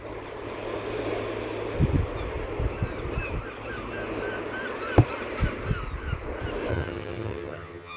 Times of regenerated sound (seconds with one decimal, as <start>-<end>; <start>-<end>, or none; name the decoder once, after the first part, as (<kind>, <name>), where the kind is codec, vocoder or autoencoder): 6.7-8.0 (vocoder, HiFi-GAN)